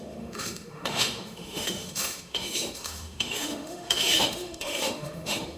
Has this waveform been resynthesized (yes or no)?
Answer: yes